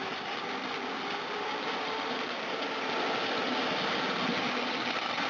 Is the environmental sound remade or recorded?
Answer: recorded